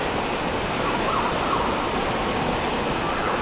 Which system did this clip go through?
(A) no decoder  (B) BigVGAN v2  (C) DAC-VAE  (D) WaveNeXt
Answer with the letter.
A